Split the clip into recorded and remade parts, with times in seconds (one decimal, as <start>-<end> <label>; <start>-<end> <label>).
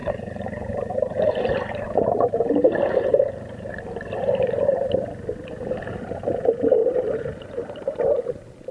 0.0-3.7 remade; 3.7-6.8 recorded; 6.8-8.2 remade; 8.2-8.7 recorded